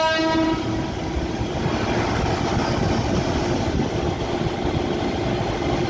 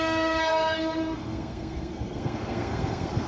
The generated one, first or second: second